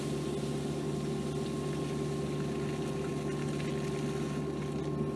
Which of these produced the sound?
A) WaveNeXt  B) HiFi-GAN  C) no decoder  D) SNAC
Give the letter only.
C